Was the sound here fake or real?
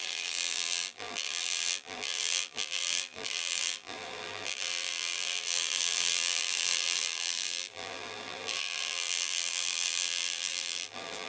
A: fake